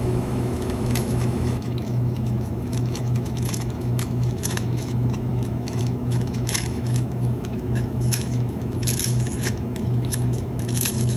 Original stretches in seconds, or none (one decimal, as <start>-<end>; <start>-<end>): none